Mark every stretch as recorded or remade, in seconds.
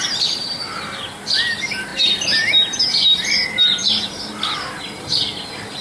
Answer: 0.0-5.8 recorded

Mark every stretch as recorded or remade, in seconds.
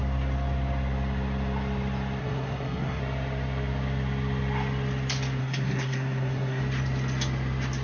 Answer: 0.0-2.2 recorded; 2.2-3.0 remade; 3.0-5.4 recorded; 5.4-6.6 remade; 6.6-7.8 recorded